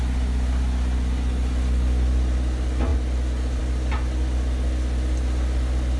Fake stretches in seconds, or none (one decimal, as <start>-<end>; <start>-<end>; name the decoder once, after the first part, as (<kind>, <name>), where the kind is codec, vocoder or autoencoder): none